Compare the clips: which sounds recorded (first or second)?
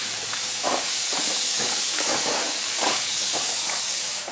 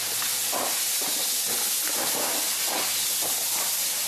second